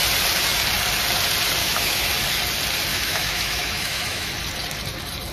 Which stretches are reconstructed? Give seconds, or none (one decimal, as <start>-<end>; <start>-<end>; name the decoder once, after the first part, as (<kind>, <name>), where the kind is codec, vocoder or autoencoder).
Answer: 1.6-2.1 (autoencoder, DAC-VAE); 2.9-4.3